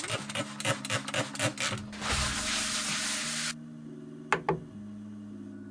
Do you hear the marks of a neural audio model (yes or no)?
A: no